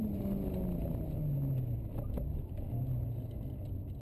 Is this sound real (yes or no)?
yes